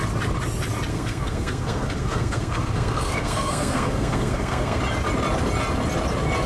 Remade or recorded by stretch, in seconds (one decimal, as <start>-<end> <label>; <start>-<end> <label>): 0.0-0.9 recorded; 0.9-4.8 remade; 4.8-6.5 recorded